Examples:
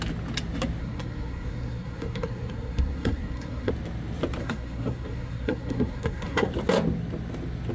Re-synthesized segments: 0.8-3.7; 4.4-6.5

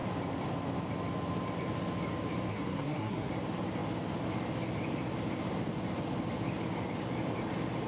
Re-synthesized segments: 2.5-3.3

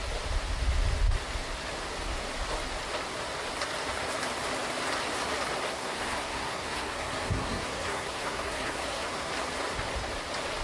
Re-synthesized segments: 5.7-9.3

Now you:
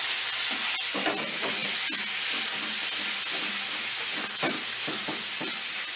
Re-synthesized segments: none

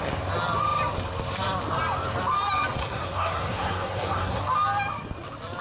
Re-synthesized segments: 2.8-4.4